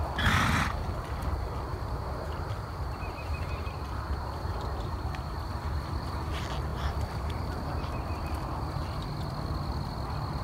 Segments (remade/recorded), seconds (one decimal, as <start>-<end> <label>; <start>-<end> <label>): 0.0-1.7 recorded; 1.7-4.2 remade; 4.2-6.7 recorded; 6.7-7.7 remade; 7.7-10.4 recorded

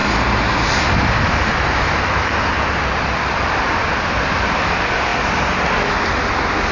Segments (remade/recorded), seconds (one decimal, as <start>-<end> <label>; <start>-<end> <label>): 0.0-6.7 recorded

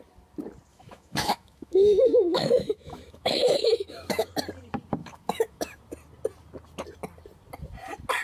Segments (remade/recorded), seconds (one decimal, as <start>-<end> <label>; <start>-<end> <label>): 0.0-0.7 recorded; 0.7-4.3 remade; 4.3-5.0 recorded; 5.0-5.8 remade; 5.8-8.2 recorded

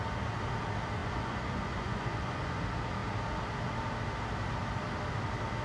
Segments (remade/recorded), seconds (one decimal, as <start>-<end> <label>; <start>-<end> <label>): 0.0-1.0 recorded; 1.0-2.6 remade; 2.6-5.6 recorded

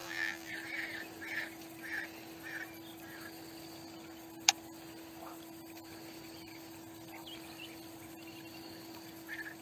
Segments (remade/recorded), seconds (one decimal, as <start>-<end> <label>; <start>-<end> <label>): 0.0-0.5 remade; 0.5-9.6 recorded